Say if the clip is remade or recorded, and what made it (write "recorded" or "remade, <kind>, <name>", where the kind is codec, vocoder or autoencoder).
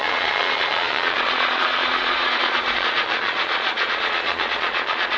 remade, vocoder, Vocos